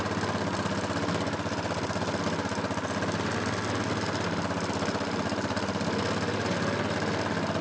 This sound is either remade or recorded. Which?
recorded